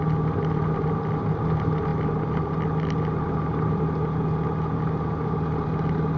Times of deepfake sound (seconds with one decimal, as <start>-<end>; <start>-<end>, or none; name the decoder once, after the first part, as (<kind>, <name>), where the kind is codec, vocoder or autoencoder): none